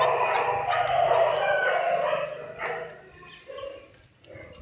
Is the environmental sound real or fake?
real